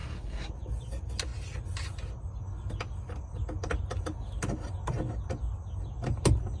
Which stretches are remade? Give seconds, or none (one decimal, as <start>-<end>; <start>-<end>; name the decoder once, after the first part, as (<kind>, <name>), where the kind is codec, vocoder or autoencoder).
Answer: 0.0-0.5 (codec, SNAC)